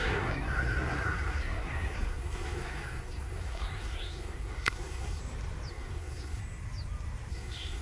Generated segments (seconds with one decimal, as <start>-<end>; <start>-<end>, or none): 0.0-5.2; 5.7-6.4; 7.3-7.8

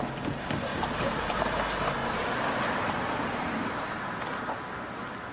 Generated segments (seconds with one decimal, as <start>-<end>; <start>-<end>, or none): 0.7-1.4; 2.0-4.2

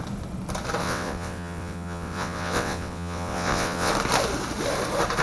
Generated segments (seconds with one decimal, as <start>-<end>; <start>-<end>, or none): 0.8-3.9

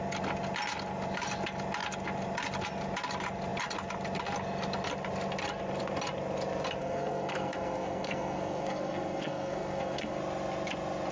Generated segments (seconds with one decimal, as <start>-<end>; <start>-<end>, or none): 6.8-10.2

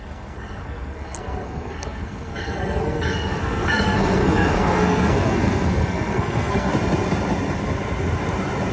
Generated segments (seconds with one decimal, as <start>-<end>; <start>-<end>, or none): 0.0-6.7

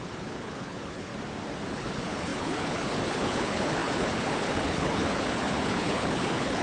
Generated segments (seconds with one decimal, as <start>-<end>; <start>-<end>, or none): 0.0-1.1; 1.7-6.6

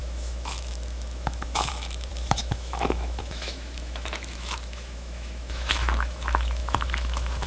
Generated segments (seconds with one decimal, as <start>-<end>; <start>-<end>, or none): 0.0-7.5

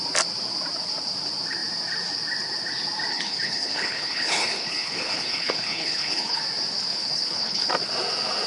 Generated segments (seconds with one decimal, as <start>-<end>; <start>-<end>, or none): 3.1-6.4; 6.9-7.7